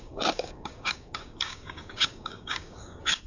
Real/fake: fake